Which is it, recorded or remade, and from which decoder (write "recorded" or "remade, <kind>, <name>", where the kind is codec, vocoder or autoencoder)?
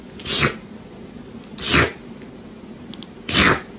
recorded